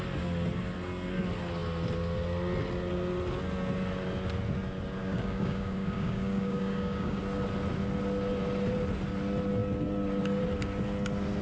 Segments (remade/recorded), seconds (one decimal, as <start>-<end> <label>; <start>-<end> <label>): 0.0-5.0 recorded; 5.0-7.2 remade; 7.2-11.4 recorded